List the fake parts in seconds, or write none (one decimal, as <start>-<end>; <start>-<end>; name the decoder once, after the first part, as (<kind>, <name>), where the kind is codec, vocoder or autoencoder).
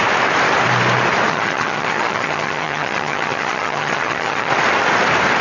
1.3-4.5 (vocoder, HiFi-GAN)